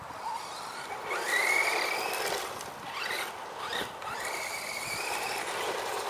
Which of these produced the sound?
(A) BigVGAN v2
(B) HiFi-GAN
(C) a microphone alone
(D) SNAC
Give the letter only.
A